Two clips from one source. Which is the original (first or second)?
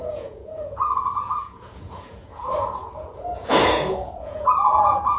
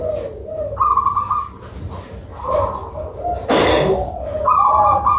second